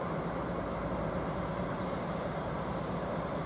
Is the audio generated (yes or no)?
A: yes